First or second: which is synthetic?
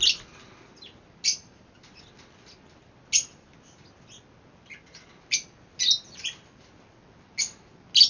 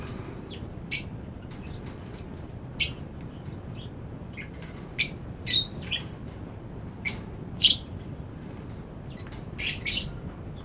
second